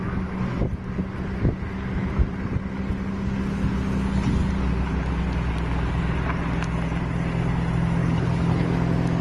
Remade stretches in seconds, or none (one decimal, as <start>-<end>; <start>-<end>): 8.0-8.7